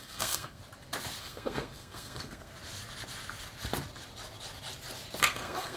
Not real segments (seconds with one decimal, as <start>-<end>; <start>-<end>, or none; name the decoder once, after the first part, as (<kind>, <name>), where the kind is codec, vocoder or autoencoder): 0.0-0.6 (codec, SNAC); 1.2-2.5; 5.2-5.8